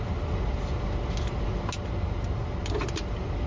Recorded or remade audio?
recorded